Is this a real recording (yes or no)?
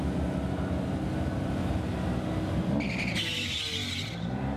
yes